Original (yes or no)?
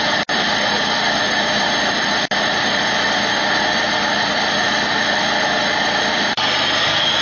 yes